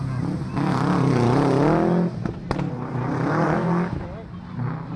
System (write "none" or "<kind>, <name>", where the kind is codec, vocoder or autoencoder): none